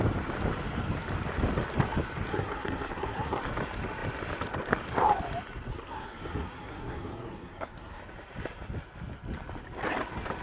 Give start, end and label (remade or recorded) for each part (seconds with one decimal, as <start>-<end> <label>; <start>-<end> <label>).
0.0-2.3 recorded; 2.3-3.4 remade; 3.4-5.7 recorded; 5.7-8.0 remade; 8.0-10.4 recorded